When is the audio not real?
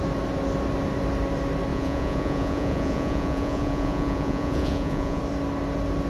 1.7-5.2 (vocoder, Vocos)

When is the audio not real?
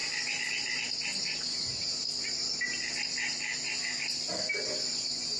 1.2-1.7 (vocoder, Vocos); 4.9-5.4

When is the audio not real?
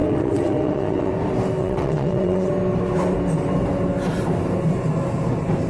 0.0-1.1 (vocoder, WaveNeXt); 1.6-2.5